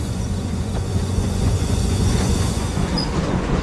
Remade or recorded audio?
remade